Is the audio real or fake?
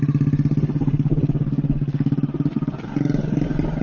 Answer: real